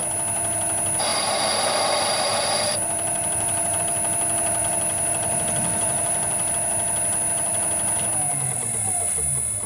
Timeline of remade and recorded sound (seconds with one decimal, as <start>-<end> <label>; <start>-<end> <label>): 0.0-1.1 recorded; 1.1-3.8 remade; 3.8-4.6 recorded; 4.6-6.5 remade; 6.5-9.7 recorded